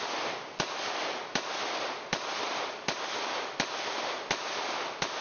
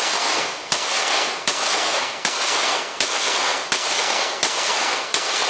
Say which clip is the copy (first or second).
second